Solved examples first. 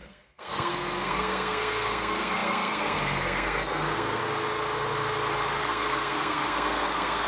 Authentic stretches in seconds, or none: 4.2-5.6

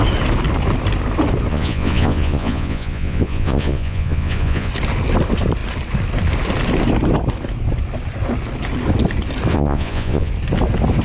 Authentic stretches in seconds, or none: 0.0-1.5; 4.7-9.5; 10.3-11.0

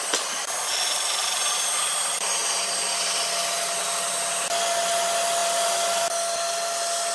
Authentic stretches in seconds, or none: 0.0-7.1

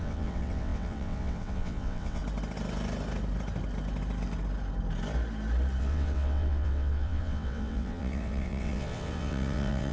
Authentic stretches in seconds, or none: 2.2-5.8

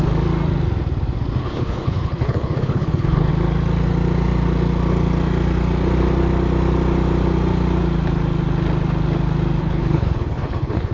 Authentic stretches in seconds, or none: 0.0-1.4; 3.3-9.6

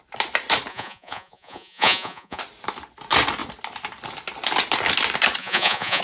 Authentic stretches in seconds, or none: 0.0-0.7; 2.4-5.4

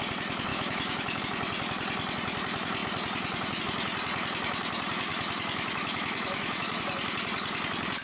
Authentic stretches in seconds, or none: 0.0-0.5; 1.2-5.1; 6.8-8.0

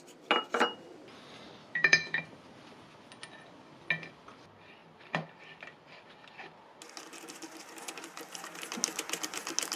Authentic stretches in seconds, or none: 0.0-1.6; 2.2-9.8